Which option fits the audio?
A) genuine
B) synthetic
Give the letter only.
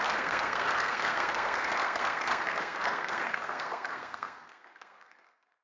B